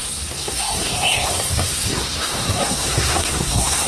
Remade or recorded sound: remade